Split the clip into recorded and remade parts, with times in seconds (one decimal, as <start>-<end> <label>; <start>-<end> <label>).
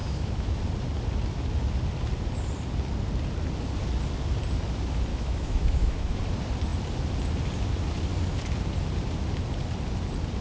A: 0.0-0.6 remade; 0.6-5.1 recorded; 5.1-6.2 remade; 6.2-10.4 recorded